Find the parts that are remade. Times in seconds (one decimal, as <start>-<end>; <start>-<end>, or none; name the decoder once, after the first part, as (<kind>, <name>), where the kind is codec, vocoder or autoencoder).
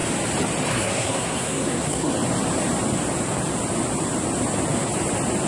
0.7-2.1 (codec, SNAC)